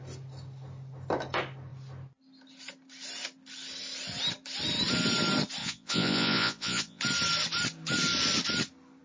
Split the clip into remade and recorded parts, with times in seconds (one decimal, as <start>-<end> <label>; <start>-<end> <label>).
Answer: 0.0-5.6 recorded; 5.6-7.0 remade; 7.0-9.0 recorded